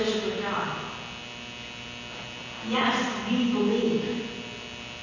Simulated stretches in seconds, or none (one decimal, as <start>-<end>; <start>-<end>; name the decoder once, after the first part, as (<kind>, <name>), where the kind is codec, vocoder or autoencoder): none